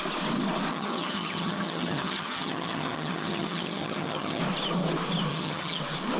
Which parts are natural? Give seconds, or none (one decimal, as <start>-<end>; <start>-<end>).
0.0-0.7; 4.4-5.3; 5.8-6.2